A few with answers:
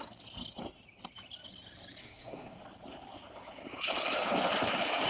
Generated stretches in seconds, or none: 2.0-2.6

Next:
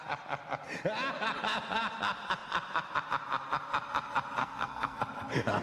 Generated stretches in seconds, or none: 4.4-5.0

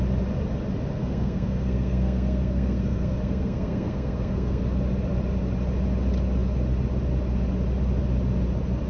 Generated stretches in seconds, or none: 1.0-4.6

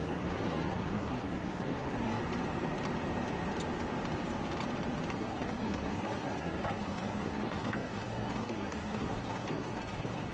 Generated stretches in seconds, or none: 0.0-2.2; 5.1-10.3

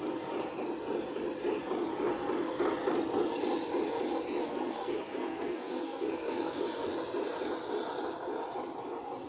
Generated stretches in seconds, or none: 4.4-6.7